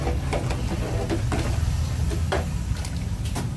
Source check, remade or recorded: recorded